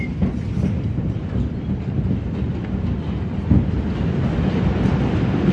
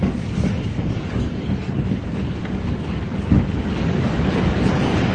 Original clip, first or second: first